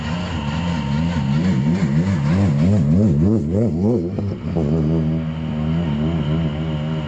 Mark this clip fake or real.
real